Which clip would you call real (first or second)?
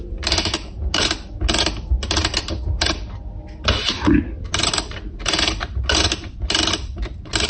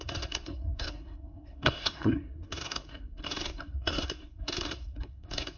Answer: first